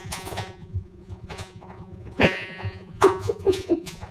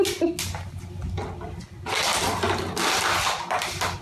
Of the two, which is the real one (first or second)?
second